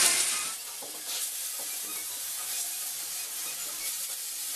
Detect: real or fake fake